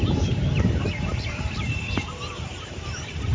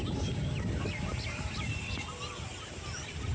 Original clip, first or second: second